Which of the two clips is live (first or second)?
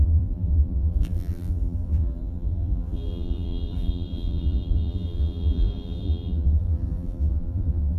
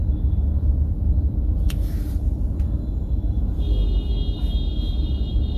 second